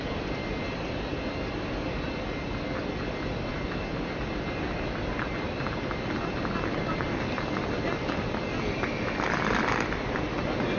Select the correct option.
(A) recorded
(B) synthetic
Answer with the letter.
A